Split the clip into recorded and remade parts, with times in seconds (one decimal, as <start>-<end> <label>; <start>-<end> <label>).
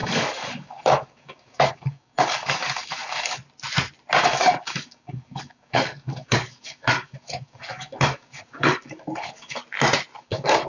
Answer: 0.0-3.4 remade; 3.4-4.2 recorded; 4.2-9.6 remade; 9.6-10.2 recorded; 10.2-10.7 remade